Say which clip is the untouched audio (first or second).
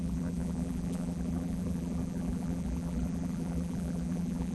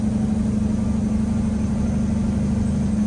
second